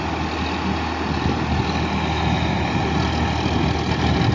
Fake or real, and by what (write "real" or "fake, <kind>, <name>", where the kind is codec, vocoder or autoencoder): real